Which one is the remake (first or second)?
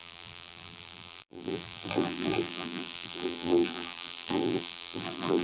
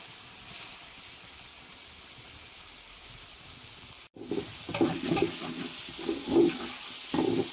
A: first